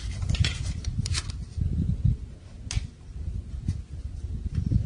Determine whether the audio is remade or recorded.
recorded